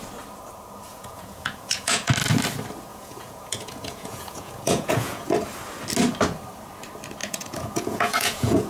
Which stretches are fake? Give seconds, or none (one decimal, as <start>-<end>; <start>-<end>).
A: 0.9-2.1; 2.9-5.3; 7.2-8.7